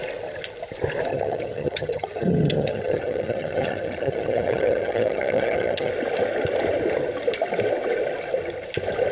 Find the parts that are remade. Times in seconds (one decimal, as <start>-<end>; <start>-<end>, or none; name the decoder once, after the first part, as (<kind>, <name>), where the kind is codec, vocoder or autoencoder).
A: 1.1-5.9 (vocoder, HiFi-GAN)